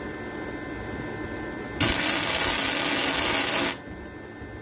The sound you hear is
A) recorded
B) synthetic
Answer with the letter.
A